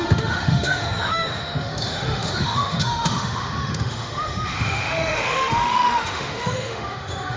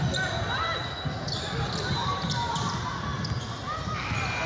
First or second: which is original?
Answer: second